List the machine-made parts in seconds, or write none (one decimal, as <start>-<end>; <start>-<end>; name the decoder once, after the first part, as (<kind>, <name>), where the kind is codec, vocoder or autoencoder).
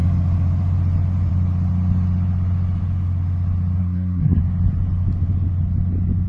3.8-4.4 (codec, SNAC)